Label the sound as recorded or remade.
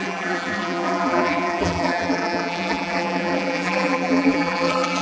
remade